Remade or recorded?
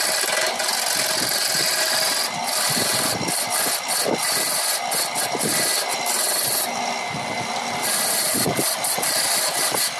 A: recorded